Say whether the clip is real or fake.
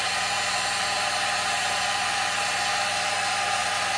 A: real